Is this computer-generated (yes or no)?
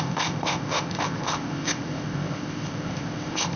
yes